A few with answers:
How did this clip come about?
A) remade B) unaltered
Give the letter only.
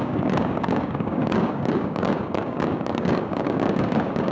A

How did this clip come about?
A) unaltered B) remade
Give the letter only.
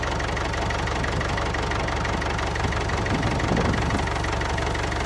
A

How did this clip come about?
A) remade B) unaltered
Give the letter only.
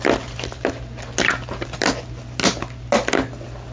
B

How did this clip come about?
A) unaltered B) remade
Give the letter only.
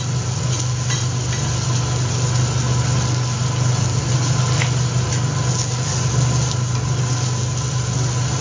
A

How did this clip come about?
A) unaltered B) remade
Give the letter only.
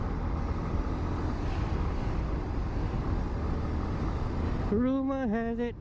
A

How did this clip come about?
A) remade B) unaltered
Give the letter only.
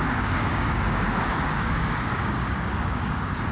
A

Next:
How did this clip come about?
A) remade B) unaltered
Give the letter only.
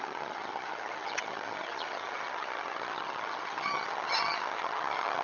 A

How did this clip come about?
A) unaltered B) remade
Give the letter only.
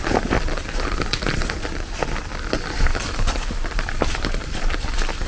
A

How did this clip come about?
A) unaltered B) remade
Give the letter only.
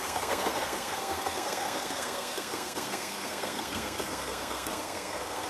B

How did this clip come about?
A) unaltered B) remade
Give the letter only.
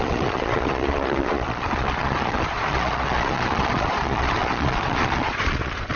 B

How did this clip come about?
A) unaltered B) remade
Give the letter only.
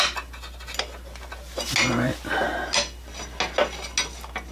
A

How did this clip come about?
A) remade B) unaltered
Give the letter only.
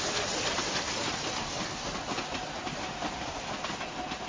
B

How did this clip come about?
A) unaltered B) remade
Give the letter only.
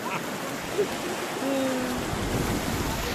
A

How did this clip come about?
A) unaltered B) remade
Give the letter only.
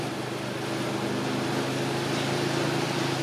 A